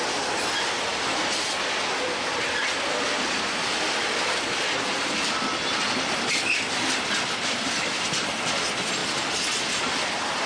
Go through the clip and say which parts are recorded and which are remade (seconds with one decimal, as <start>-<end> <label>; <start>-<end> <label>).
0.0-10.5 recorded